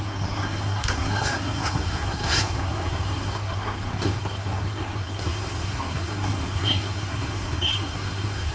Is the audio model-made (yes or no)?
yes